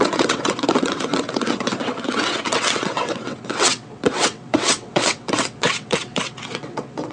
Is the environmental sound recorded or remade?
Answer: remade